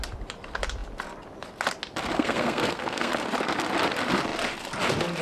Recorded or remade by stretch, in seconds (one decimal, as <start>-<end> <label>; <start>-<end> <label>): 0.0-2.1 recorded; 2.1-3.1 remade; 3.1-5.2 recorded